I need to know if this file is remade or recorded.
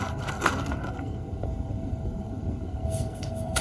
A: remade